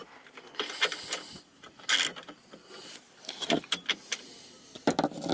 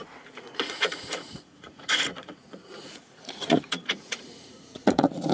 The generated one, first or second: second